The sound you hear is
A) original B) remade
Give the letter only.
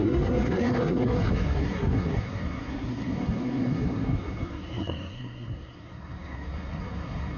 B